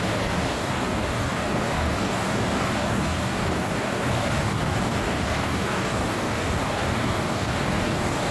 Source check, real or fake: fake